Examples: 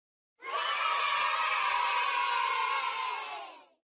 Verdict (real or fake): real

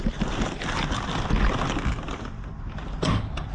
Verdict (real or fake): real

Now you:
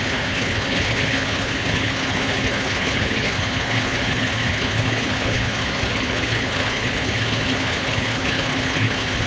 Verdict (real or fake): fake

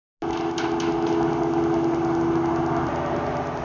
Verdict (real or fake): real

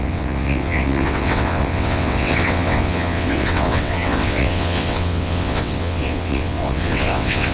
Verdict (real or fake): fake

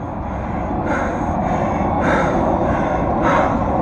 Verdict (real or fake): real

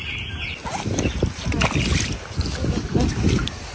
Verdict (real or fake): real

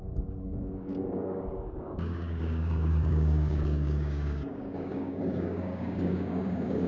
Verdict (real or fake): fake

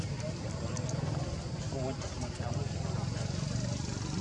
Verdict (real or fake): real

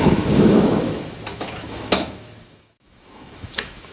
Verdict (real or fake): fake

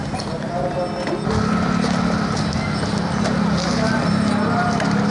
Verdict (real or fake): real